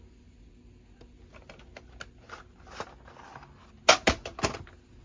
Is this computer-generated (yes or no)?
no